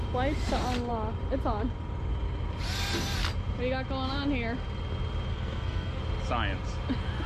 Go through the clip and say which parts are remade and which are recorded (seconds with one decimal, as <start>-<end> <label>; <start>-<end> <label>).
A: 0.0-5.3 recorded; 5.3-6.0 remade; 6.0-7.3 recorded